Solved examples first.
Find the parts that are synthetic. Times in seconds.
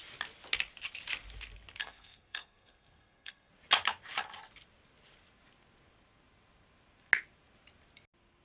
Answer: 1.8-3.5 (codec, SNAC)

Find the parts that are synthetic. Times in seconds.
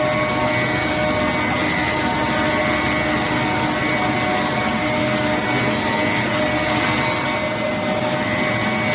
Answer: none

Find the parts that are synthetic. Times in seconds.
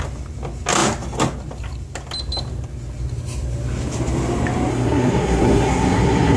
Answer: 4.7-6.4 (codec, SNAC)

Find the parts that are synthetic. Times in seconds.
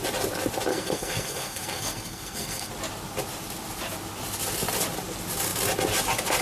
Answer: 0.7-2.7 (codec, SNAC)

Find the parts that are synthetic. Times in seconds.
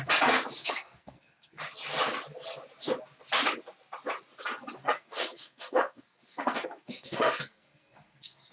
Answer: 0.6-1.6 (codec, SNAC); 4.8-8.5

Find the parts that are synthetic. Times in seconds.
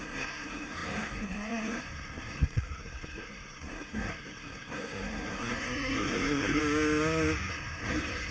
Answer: 0.0-6.6 (codec, SNAC); 7.5-8.3